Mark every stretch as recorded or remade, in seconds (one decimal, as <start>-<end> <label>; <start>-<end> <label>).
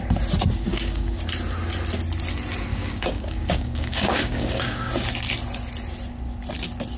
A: 0.0-0.7 recorded; 0.7-1.2 remade; 1.2-2.7 recorded; 2.7-4.9 remade; 4.9-7.0 recorded